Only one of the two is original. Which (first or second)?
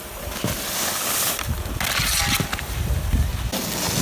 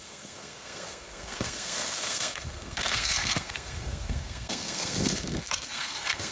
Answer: first